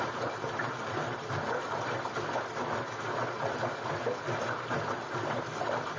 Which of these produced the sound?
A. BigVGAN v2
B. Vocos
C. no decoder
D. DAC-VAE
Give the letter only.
C